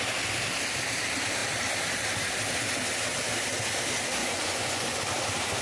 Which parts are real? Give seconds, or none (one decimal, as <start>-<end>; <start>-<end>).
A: 0.0-4.2; 5.0-5.6